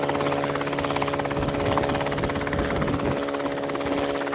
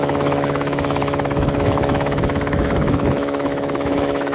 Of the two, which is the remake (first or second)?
second